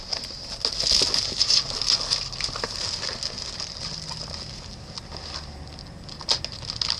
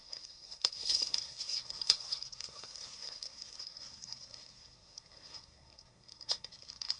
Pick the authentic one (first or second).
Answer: first